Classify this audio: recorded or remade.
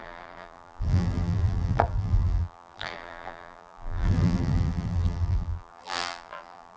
remade